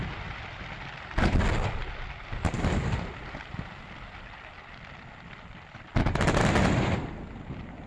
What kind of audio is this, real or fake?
real